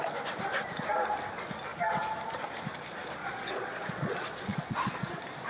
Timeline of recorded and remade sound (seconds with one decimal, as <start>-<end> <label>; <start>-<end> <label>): 0.0-3.2 recorded; 3.2-5.5 remade